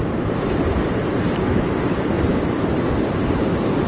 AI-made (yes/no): yes